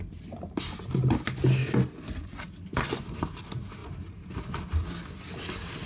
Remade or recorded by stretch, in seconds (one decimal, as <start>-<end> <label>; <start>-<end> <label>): 0.0-5.9 recorded